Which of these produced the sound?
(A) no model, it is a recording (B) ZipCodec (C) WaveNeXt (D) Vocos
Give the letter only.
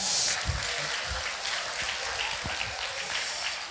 A